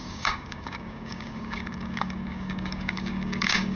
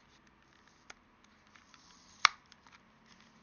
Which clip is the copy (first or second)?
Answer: first